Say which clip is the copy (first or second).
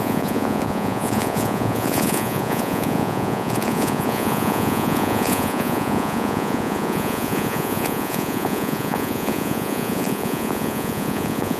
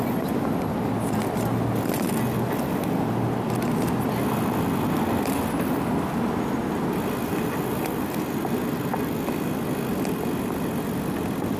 first